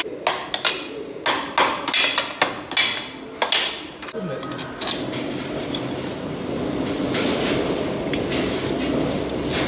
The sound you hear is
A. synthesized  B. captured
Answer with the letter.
B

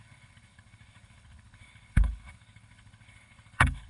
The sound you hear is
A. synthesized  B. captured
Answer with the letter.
A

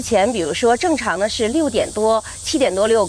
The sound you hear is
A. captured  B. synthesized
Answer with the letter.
B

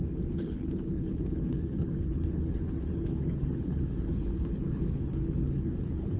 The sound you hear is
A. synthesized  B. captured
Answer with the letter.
A